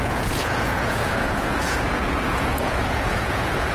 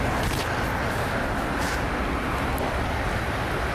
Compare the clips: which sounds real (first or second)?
second